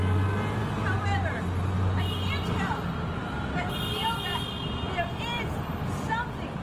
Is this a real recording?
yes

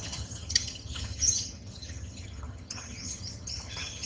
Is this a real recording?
no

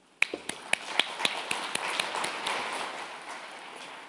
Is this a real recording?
yes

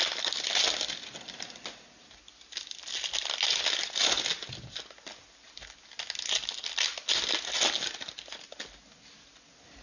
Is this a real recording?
yes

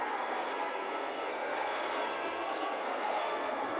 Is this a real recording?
no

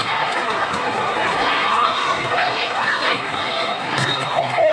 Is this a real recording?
no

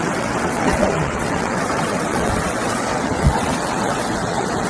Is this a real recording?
no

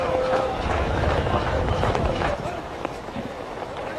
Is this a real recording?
no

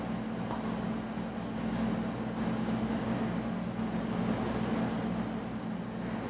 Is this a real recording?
yes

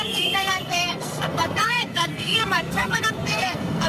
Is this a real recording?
no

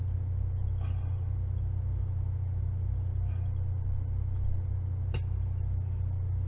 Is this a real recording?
yes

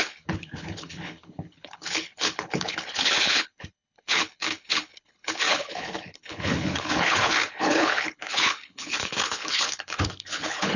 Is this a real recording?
no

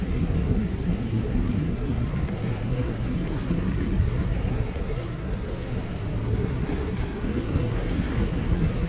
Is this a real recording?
no